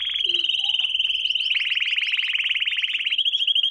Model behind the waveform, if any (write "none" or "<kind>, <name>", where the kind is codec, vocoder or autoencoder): none